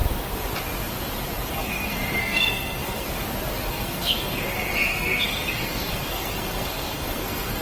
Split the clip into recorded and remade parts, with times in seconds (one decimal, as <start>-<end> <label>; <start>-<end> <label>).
0.0-1.5 recorded; 1.5-3.1 remade; 3.1-3.7 recorded; 3.7-7.6 remade